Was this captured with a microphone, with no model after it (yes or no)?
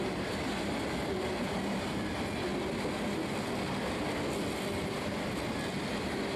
yes